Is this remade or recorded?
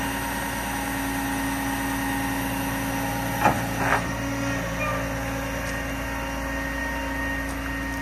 recorded